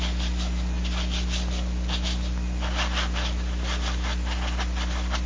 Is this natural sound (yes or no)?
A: yes